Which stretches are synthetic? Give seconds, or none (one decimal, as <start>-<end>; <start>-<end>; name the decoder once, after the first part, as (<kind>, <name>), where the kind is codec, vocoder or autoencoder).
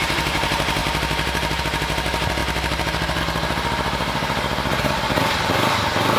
0.8-1.6 (vocoder, BigVGAN v2); 2.4-3.2